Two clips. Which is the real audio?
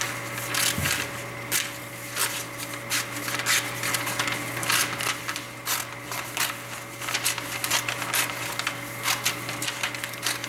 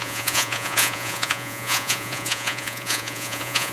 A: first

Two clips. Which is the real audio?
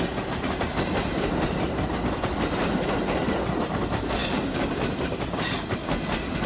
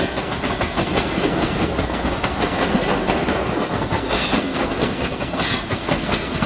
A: first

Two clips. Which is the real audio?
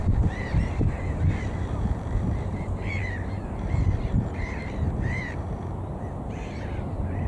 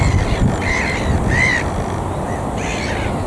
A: second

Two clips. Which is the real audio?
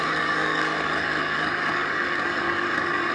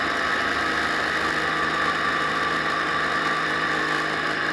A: second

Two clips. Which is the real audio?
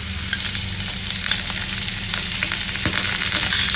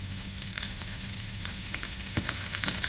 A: first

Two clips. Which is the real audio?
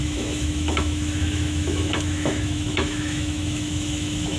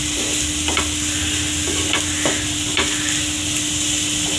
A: second